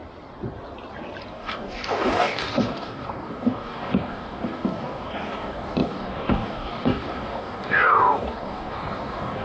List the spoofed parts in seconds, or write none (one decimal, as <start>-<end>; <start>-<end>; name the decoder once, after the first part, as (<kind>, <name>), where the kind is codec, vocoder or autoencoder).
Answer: 1.3-9.4 (codec, DAC)